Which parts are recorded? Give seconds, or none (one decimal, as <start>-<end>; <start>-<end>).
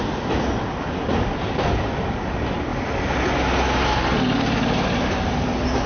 0.0-5.9